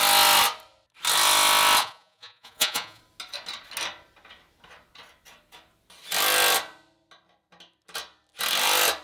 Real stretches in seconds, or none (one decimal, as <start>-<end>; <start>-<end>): 0.0-1.8; 3.0-9.0